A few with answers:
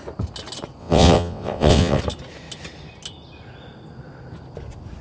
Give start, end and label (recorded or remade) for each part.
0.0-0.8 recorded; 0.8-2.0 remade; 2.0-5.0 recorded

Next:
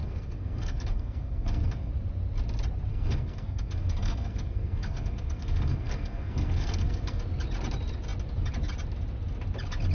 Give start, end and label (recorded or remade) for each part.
0.0-1.9 remade; 1.9-2.9 recorded; 2.9-7.2 remade; 7.2-9.9 recorded

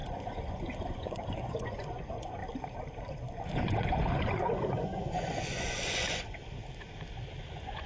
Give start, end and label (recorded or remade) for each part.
0.0-2.4 remade; 2.4-3.1 recorded; 3.1-6.4 remade; 6.4-7.5 recorded; 7.5-7.9 remade

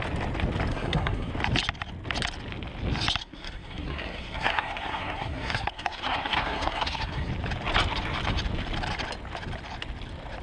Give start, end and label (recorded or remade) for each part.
0.0-0.7 recorded; 0.7-1.3 remade; 1.3-3.2 recorded; 3.2-7.3 remade; 7.3-10.4 recorded

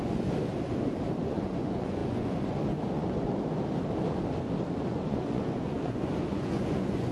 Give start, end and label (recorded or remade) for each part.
0.0-0.5 remade; 0.5-1.2 recorded; 1.2-3.3 remade; 3.3-4.9 recorded; 4.9-7.1 remade

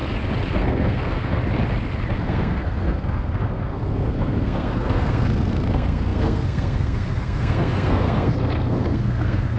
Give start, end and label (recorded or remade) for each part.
0.0-0.5 recorded; 0.5-1.4 remade; 1.4-2.1 recorded; 2.1-9.6 remade